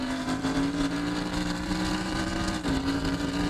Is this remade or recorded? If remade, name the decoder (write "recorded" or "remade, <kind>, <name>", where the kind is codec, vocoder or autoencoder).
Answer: remade, vocoder, BigVGAN v2